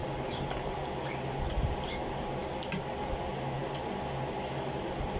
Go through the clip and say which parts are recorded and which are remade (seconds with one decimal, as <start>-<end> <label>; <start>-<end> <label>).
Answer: 0.0-5.2 recorded